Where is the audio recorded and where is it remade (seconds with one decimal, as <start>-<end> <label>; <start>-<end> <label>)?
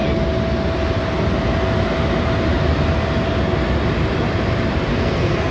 0.0-4.9 recorded; 4.9-5.5 remade